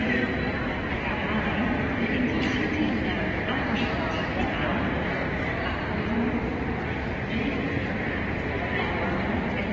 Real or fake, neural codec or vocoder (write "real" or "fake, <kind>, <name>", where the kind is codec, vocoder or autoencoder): fake, vocoder, BigVGAN v2